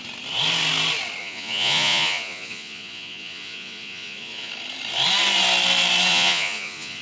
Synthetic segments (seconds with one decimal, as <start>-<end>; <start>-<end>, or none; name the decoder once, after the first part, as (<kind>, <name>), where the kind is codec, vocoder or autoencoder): 1.2-4.5 (vocoder, Vocos); 6.1-7.0